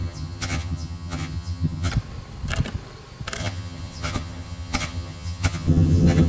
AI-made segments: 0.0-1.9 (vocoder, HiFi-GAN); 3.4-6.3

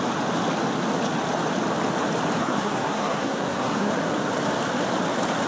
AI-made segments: 2.4-3.9 (codec, SNAC)

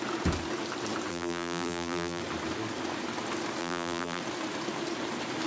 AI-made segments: 1.1-2.2 (vocoder, BigVGAN v2); 3.6-4.2

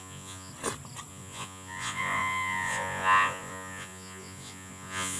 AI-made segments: 0.0-0.5 (vocoder, Vocos); 1.1-5.2

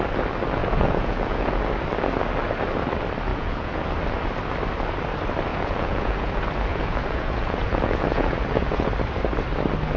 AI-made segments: 0.6-1.5 (vocoder, Vocos); 3.3-3.8; 5.5-6.3; 6.7-8.9

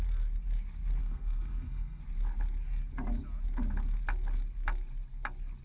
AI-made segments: 1.0-2.0 (codec, SNAC)

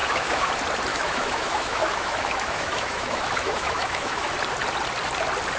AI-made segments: 0.0-0.5 (autoencoder, DAC-VAE); 0.9-4.3